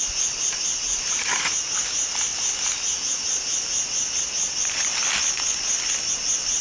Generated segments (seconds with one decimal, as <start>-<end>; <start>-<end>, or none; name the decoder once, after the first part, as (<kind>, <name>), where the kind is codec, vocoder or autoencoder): none